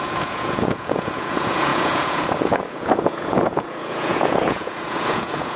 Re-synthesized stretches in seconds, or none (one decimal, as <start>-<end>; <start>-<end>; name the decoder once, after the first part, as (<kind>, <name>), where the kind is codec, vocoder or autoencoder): 0.0-5.6 (vocoder, Vocos)